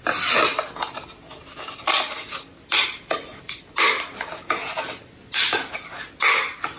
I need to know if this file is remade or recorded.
recorded